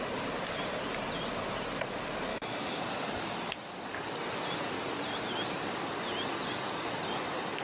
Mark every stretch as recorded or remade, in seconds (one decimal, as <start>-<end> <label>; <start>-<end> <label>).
0.0-2.3 recorded; 2.3-2.8 remade; 2.8-7.6 recorded